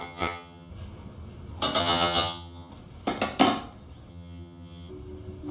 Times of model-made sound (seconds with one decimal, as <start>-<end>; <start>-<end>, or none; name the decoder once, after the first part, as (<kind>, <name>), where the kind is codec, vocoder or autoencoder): 0.0-0.7 (vocoder, HiFi-GAN); 1.8-2.7; 4.1-4.9